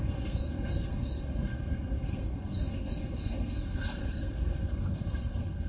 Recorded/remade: remade